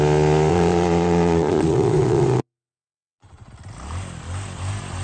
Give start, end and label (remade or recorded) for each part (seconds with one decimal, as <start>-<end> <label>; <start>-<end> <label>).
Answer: 0.0-0.5 recorded; 0.5-3.5 remade; 3.5-5.0 recorded